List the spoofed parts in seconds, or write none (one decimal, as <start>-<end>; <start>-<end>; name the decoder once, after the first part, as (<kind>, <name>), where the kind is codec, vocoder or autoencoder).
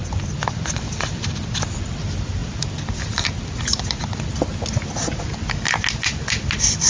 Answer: 0.5-4.3 (vocoder, BigVGAN v2); 6.4-6.9